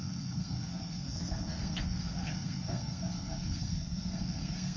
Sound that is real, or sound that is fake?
fake